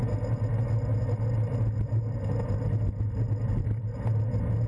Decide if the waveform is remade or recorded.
recorded